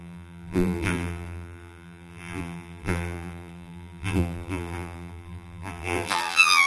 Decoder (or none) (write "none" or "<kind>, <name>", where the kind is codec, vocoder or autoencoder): vocoder, BigVGAN v2